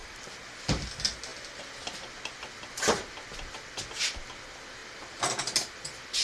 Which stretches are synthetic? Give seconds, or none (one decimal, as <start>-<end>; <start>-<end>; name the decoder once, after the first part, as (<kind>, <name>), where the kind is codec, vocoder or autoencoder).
none

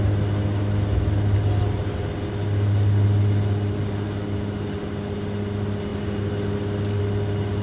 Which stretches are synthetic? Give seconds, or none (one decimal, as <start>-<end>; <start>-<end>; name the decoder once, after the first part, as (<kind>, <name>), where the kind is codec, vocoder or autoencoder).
none

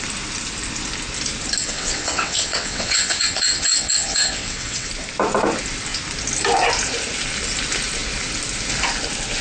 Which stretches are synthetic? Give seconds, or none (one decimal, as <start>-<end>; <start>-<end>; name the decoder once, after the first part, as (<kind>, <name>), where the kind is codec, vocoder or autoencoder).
1.6-4.9 (vocoder, WaveNeXt)

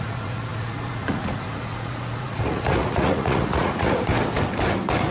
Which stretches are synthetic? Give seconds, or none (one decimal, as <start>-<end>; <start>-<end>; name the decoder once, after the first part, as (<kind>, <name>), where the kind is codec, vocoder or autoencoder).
0.0-4.1 (vocoder, Vocos)

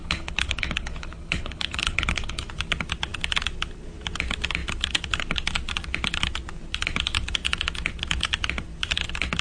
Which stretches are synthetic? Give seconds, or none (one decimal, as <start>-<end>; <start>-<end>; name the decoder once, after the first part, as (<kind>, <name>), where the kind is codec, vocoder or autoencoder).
0.0-2.5 (codec, HILCodec)

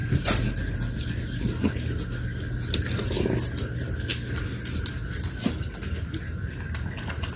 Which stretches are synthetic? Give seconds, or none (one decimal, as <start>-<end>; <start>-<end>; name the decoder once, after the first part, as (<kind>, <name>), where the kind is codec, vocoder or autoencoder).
none